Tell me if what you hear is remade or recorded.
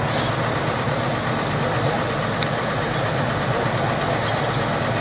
recorded